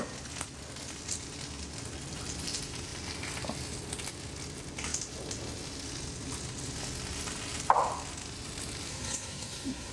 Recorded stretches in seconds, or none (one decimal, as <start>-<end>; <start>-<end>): 0.0-8.9